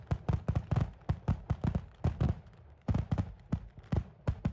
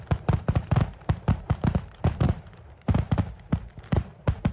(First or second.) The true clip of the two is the first